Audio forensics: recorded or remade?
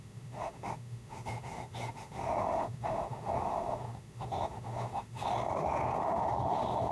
remade